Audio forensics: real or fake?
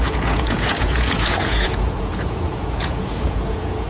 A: fake